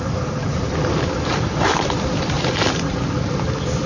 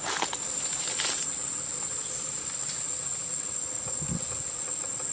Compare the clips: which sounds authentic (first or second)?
second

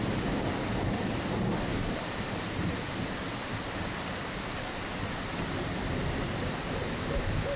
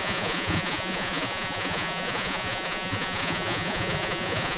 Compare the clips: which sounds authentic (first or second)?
first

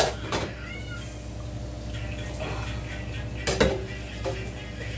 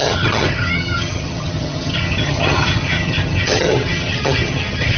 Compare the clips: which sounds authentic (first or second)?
first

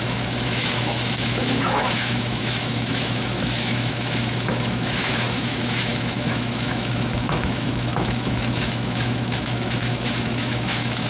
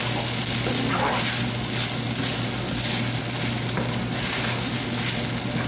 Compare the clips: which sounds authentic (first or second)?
second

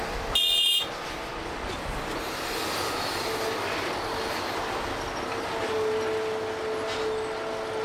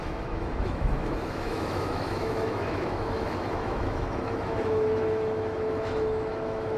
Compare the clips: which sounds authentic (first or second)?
first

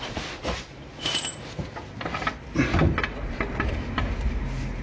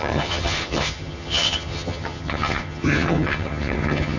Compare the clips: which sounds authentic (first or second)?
first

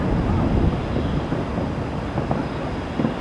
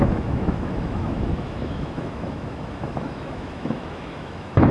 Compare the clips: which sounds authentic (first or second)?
first